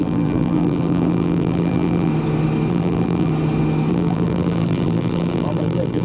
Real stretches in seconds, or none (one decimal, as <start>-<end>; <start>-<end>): 2.1-2.7; 3.3-3.9